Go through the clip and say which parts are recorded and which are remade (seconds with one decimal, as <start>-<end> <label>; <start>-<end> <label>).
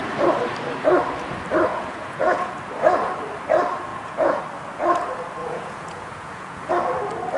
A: 0.0-1.7 recorded; 1.7-2.5 remade; 2.5-3.9 recorded; 3.9-4.4 remade; 4.4-5.4 recorded; 5.4-6.7 remade; 6.7-7.4 recorded